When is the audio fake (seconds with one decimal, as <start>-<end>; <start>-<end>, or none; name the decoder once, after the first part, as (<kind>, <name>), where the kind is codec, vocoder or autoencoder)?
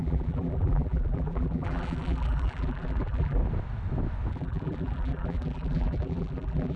0.0-3.4 (vocoder, BigVGAN v2); 4.3-6.8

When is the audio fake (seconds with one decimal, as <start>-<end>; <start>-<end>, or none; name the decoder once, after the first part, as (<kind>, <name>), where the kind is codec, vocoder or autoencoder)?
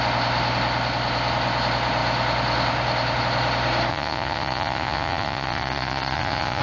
3.9-6.6 (vocoder, Vocos)